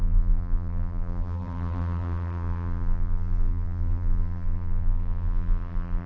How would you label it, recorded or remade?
remade